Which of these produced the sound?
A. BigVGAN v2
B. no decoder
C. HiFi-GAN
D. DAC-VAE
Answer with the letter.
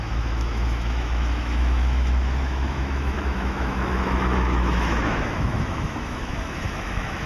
D